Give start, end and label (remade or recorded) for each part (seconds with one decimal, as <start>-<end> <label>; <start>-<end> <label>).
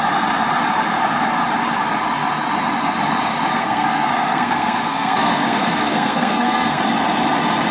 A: 0.0-3.5 recorded; 3.5-6.8 remade; 6.8-7.7 recorded